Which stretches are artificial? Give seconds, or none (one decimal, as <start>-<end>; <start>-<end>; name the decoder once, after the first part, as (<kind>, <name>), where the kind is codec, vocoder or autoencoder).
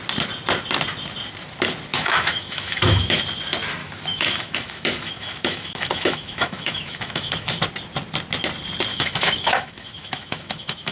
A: 1.9-3.2 (autoencoder, DAC-VAE); 3.8-7.6; 8.9-10.9